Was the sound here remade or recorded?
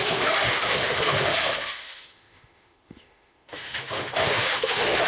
remade